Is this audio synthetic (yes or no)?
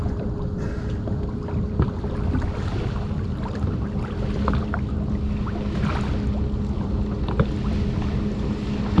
no